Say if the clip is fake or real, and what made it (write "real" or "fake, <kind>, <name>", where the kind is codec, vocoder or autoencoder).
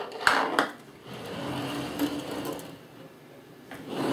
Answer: real